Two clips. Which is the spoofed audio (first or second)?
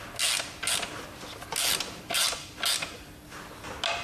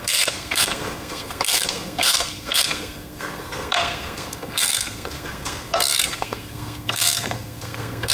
second